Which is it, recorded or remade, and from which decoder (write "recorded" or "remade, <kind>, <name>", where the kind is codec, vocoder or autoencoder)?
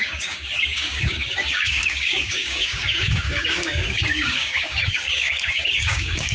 remade, codec, DAC